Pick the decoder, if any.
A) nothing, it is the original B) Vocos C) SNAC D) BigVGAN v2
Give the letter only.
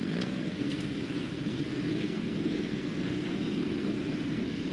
C